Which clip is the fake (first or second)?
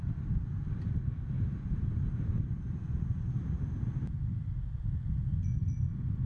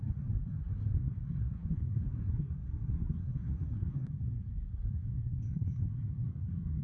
second